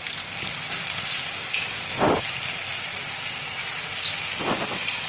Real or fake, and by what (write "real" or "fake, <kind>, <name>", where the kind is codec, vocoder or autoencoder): real